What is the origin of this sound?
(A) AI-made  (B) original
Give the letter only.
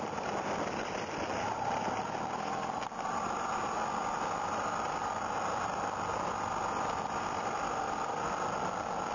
B